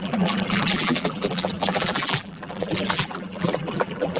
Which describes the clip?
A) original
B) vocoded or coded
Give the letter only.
B